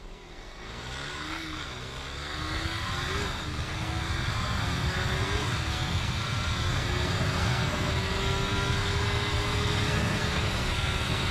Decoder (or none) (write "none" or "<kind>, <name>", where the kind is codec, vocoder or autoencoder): codec, SNAC